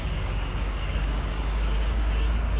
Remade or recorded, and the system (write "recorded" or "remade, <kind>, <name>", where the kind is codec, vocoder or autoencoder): remade, codec, DAC